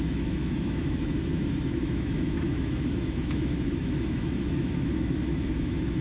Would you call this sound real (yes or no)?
no